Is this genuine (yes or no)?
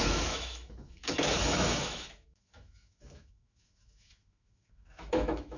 no